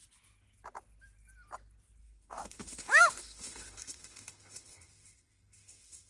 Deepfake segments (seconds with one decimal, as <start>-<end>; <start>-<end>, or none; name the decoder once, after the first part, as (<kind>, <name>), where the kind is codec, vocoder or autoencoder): 2.0-6.1 (autoencoder, DAC-VAE)

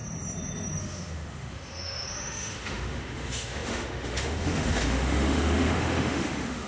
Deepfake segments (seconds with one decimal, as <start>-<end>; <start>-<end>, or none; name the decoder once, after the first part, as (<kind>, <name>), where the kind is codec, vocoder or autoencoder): 0.8-6.7 (autoencoder, DAC-VAE)

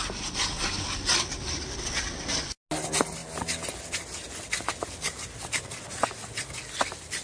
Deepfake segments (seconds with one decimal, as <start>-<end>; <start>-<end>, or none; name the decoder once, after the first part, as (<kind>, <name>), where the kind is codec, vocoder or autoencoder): none

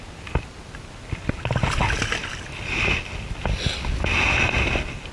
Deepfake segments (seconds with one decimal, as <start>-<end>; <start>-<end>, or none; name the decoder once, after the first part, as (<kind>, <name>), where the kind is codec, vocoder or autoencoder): none

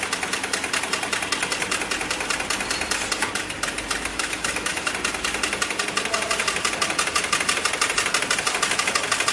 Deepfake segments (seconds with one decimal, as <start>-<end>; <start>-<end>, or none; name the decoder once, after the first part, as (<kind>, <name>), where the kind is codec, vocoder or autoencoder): 4.1-4.9 (autoencoder, DAC-VAE)